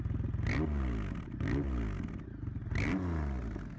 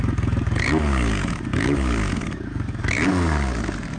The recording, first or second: first